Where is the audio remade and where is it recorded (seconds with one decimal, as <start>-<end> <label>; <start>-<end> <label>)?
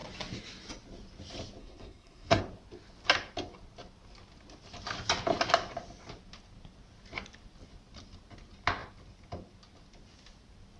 0.0-1.6 recorded; 1.6-2.4 remade; 2.4-10.8 recorded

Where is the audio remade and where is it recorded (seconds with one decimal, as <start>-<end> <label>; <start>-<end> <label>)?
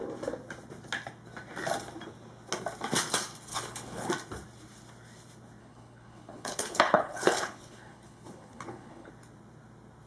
0.0-3.5 recorded; 3.5-4.1 remade; 4.1-5.6 recorded; 5.6-9.1 remade; 9.1-10.1 recorded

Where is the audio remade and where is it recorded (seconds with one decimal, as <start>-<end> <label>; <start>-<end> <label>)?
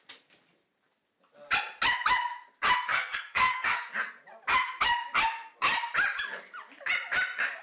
0.0-2.9 recorded; 2.9-3.8 remade; 3.8-7.6 recorded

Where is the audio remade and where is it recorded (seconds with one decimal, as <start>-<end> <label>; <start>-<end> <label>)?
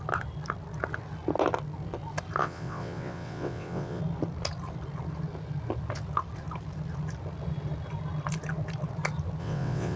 0.0-2.4 recorded; 2.4-4.0 remade; 4.0-9.4 recorded; 9.4-10.0 remade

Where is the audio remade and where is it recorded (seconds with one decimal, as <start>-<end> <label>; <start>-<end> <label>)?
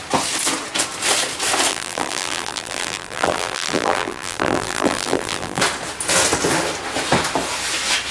0.0-1.7 recorded; 1.7-5.6 remade; 5.6-8.1 recorded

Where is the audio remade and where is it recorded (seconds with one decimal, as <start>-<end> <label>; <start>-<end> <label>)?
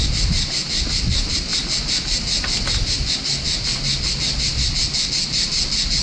0.0-6.0 recorded